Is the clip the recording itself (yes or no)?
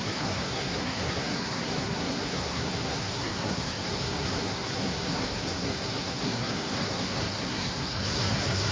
no